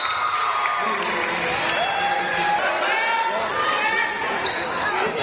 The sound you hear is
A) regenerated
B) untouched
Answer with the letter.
B